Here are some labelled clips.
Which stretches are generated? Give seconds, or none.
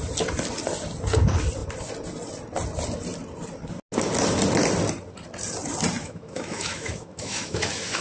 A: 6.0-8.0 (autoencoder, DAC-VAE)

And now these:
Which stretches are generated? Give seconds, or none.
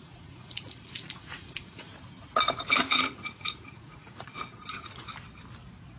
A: 0.0-1.9 (vocoder, Vocos); 2.8-5.1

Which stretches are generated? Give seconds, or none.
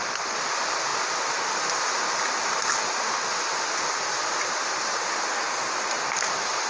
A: none